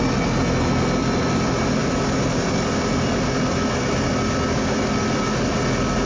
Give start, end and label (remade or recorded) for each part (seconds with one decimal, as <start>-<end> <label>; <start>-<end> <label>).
0.0-6.1 recorded